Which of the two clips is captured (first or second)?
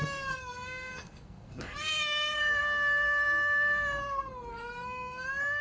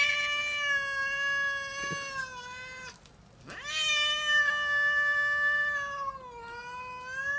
second